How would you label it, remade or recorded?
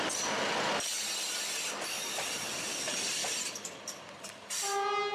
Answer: recorded